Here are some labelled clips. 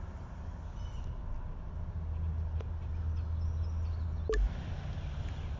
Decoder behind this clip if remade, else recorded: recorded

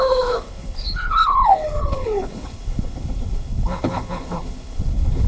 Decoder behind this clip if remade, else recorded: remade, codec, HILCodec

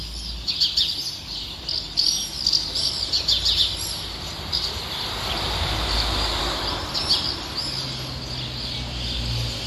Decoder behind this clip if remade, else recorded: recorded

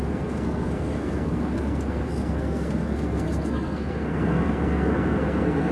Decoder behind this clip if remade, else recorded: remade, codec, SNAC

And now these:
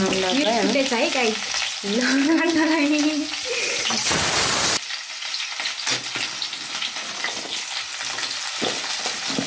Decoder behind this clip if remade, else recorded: recorded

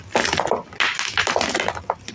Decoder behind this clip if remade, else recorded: recorded